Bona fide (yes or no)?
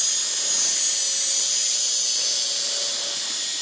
yes